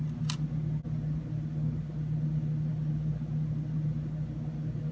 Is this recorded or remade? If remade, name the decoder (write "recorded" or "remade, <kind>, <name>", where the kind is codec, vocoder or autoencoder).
recorded